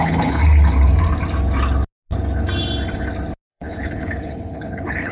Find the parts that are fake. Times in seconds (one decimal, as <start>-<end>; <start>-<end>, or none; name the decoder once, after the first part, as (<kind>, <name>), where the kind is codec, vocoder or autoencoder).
0.0-0.4 (codec, HILCodec); 3.5-5.1